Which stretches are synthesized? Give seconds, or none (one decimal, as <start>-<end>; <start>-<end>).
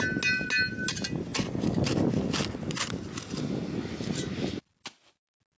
none